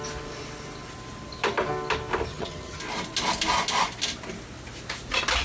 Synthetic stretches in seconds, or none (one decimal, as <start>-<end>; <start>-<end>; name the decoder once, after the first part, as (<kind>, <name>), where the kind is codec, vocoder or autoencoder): 2.3-2.8 (vocoder, HiFi-GAN)